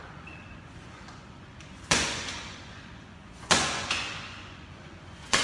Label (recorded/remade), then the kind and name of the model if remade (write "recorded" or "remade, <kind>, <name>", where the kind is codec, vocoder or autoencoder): remade, vocoder, Vocos